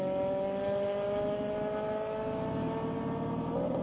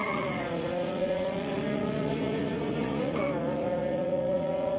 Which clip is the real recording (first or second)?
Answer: first